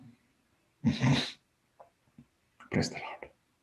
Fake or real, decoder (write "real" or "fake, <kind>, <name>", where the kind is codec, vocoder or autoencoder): real